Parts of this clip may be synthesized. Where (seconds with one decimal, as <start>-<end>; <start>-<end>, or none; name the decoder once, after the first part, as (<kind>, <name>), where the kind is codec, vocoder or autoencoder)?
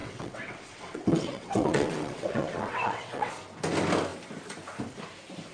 0.0-3.3 (vocoder, WaveNeXt)